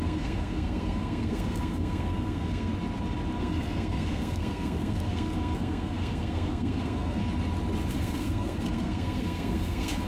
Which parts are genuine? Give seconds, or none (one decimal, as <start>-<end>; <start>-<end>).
2.7-3.4; 7.2-7.9

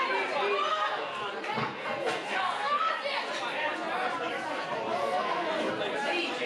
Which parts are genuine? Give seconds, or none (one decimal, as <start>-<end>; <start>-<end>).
0.0-0.7; 1.2-1.6; 2.9-5.0; 5.7-6.5

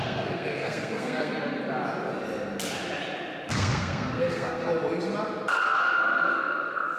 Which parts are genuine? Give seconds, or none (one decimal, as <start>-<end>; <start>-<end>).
1.3-3.5; 4.6-5.5

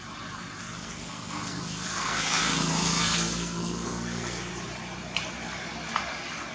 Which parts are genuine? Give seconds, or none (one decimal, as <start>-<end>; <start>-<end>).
0.0-0.6; 4.5-6.5

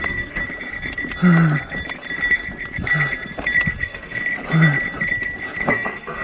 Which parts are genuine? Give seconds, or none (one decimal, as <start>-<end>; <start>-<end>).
0.4-3.8; 4.2-5.7

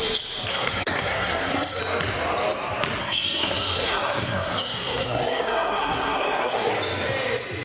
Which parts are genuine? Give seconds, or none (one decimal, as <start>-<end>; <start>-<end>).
0.0-0.5; 1.8-3.0; 6.7-7.6

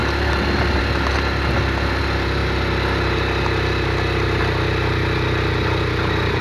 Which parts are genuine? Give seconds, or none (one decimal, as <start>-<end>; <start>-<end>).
0.0-6.4